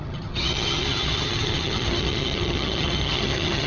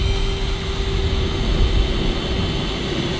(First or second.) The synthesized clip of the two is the first